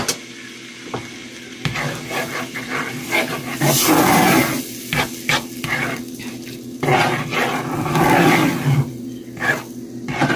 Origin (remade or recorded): recorded